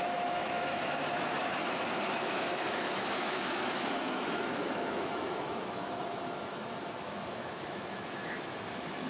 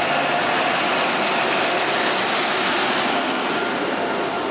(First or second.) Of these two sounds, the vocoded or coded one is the first